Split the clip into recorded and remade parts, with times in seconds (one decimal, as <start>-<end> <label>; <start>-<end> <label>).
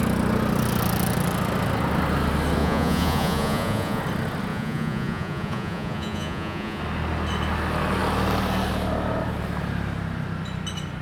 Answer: 0.0-2.6 recorded; 2.6-4.0 remade; 4.0-4.5 recorded; 4.5-6.8 remade; 6.8-11.0 recorded